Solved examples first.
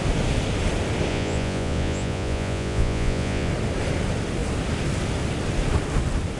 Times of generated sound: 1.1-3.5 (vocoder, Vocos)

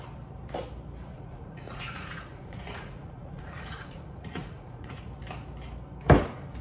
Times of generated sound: 1.1-5.1 (vocoder, Vocos)

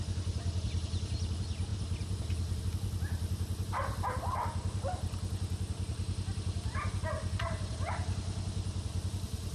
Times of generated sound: none

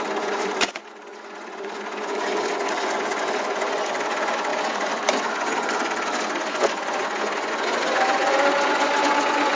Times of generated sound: 0.0-9.6 (vocoder, Vocos)

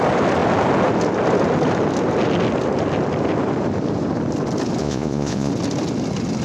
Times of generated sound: 4.8-5.5 (vocoder, Vocos)

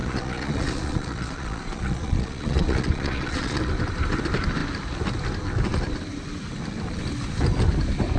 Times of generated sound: 0.0-3.7 (vocoder, Vocos)

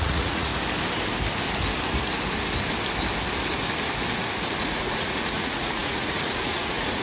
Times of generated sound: 0.0-0.5 (vocoder, Vocos); 4.6-7.0